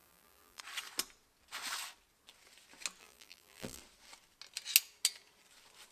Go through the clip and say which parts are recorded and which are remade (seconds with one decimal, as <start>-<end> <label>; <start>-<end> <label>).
0.0-0.6 remade; 0.6-3.0 recorded; 3.0-3.8 remade; 3.8-5.9 recorded